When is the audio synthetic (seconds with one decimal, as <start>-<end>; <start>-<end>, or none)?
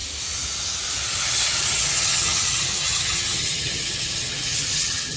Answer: 1.2-5.2